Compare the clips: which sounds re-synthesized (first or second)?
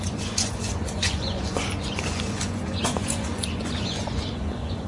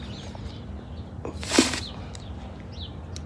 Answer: first